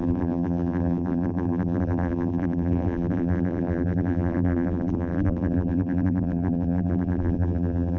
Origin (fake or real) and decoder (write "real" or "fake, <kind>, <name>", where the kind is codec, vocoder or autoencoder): fake, vocoder, BigVGAN v2